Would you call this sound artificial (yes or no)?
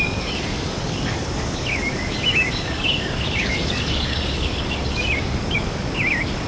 yes